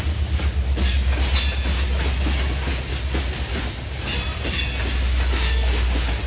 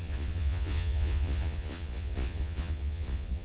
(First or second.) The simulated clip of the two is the second